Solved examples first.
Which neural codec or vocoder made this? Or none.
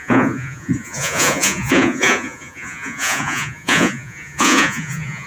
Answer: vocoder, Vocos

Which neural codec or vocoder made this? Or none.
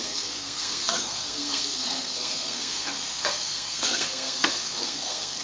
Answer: codec, SNAC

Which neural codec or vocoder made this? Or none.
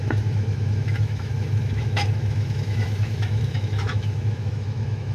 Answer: autoencoder, DAC-VAE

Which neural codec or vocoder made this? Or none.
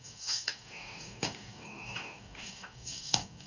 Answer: codec, DAC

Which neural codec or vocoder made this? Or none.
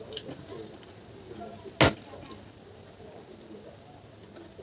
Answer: none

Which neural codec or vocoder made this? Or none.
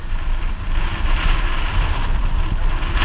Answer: none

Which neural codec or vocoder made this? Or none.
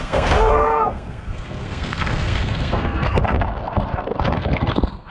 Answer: codec, SNAC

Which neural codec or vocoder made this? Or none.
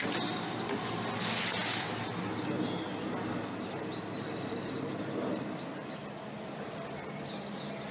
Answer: none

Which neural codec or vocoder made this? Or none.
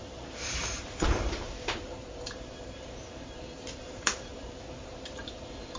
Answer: vocoder, BigVGAN v2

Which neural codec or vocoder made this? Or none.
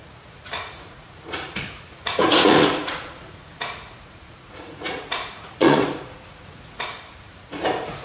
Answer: vocoder, Vocos